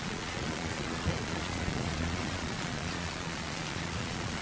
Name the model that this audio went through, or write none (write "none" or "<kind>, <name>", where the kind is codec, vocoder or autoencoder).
vocoder, Vocos